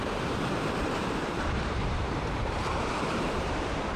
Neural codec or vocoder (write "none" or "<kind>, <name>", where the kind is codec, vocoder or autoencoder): vocoder, BigVGAN v2